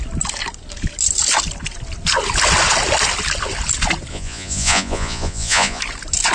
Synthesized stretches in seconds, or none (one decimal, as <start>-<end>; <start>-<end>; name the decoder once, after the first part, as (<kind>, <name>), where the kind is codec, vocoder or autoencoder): 4.1-5.8 (vocoder, Vocos)